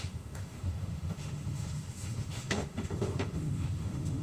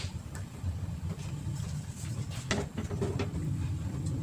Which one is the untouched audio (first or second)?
second